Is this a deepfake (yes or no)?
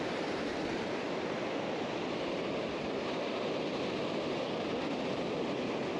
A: no